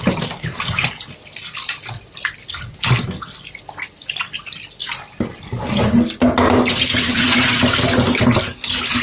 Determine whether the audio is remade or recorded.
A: recorded